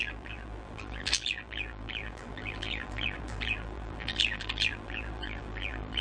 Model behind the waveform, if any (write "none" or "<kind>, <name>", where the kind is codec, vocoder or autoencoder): vocoder, BigVGAN v2